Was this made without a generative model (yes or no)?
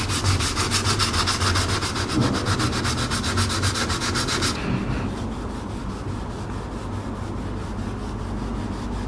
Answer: yes